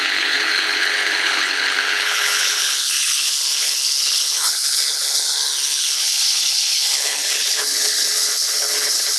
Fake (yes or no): yes